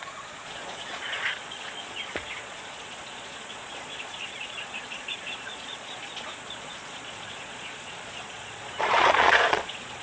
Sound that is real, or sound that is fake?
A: fake